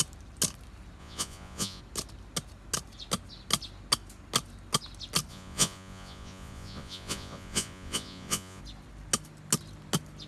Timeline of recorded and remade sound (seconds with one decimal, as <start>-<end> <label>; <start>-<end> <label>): 0.0-1.0 recorded; 1.0-1.8 remade; 1.8-5.3 recorded; 5.3-8.6 remade; 8.6-10.3 recorded